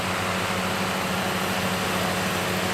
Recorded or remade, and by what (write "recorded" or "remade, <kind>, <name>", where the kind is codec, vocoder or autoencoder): recorded